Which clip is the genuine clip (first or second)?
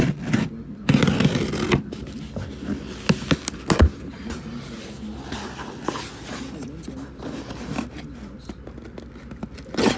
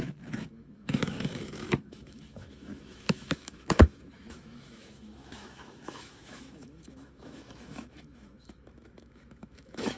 first